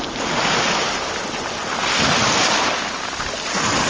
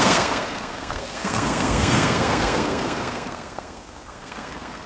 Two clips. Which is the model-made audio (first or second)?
second